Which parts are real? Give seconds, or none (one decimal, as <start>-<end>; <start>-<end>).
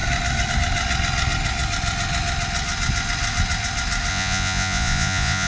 0.0-4.1